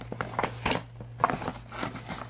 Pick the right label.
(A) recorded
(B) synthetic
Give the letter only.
A